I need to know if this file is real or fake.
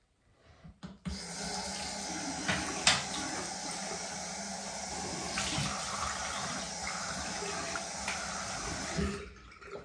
real